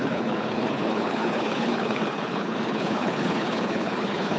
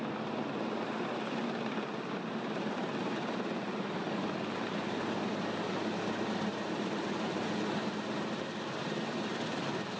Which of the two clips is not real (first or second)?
first